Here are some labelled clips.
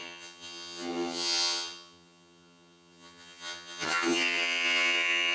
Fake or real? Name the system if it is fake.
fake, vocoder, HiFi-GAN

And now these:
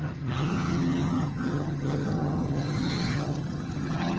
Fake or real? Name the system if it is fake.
fake, vocoder, HiFi-GAN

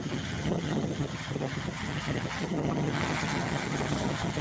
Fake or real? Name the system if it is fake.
fake, vocoder, HiFi-GAN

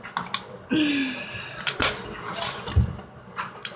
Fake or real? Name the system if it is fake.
real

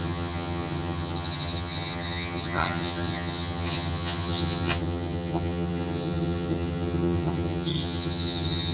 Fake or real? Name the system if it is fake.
fake, vocoder, HiFi-GAN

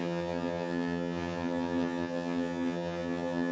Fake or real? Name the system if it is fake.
fake, vocoder, HiFi-GAN